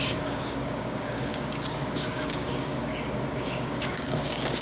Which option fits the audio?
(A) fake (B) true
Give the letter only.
A